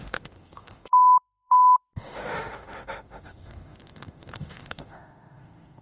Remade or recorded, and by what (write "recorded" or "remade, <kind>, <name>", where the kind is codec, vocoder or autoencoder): remade, autoencoder, DAC-VAE